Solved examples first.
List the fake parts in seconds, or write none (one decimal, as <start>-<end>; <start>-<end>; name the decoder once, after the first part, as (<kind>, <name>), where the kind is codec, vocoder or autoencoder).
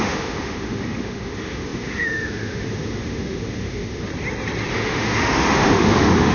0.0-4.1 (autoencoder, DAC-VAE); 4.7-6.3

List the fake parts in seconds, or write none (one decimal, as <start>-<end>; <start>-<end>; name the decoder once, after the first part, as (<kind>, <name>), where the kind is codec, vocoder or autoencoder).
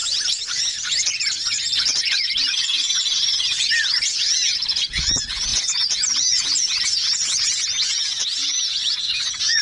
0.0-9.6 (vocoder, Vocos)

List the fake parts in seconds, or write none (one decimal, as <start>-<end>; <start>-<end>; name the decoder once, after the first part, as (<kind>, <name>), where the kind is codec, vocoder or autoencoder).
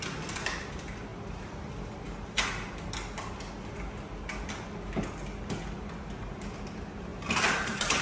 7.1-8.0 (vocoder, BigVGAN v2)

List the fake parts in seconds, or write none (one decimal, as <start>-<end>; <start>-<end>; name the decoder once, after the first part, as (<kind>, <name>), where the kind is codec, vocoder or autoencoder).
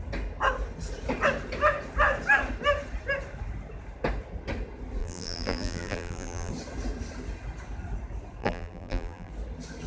5.0-6.5 (vocoder, BigVGAN v2); 8.4-9.3